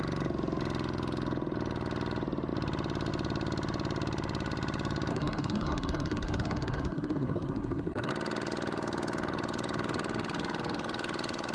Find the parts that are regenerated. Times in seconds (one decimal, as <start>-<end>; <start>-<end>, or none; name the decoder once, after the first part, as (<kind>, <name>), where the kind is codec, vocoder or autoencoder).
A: 5.1-8.1 (codec, SNAC)

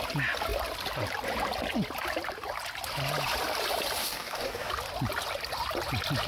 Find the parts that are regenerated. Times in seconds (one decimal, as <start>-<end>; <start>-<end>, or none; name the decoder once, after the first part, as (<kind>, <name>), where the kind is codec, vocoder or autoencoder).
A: 4.0-4.7 (codec, DAC)

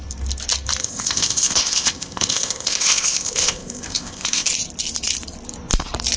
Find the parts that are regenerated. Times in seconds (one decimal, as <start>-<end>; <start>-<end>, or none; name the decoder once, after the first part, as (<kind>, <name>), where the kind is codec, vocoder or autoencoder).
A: 0.8-4.5 (codec, ZipCodec)